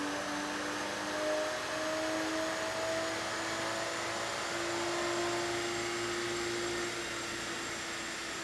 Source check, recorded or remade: recorded